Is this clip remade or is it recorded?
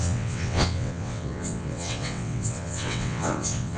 remade